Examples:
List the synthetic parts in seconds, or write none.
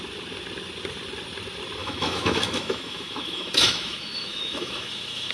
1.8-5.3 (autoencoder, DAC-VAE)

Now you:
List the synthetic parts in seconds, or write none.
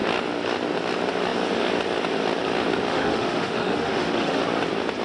2.9-4.4 (autoencoder, DAC-VAE)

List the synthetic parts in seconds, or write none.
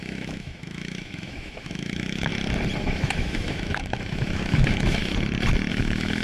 0.0-2.3 (autoencoder, DAC-VAE); 2.8-5.0; 5.7-6.2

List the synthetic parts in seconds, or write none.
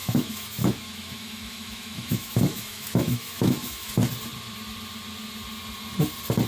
0.0-3.9 (autoencoder, DAC-VAE)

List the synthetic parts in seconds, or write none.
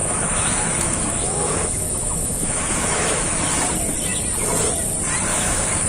0.0-3.5 (autoencoder, DAC-VAE); 5.3-5.9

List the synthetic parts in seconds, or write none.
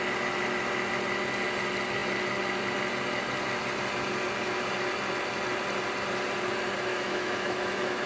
6.9-8.1 (autoencoder, DAC-VAE)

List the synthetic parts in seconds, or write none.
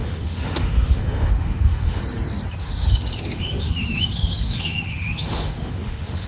0.0-2.0 (autoencoder, DAC-VAE); 2.6-6.3